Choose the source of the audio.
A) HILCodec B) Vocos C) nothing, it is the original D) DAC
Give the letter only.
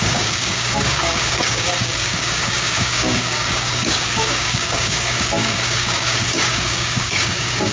D